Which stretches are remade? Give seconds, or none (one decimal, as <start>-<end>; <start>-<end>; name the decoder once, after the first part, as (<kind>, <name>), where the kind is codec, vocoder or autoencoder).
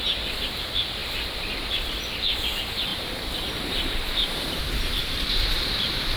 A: 2.9-4.6 (vocoder, BigVGAN v2); 5.0-5.8